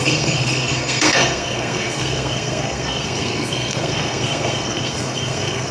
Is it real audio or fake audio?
fake